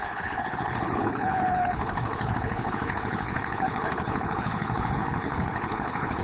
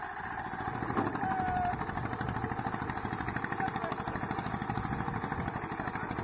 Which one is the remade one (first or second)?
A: first